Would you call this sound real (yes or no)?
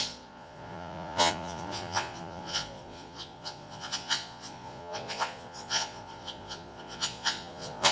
no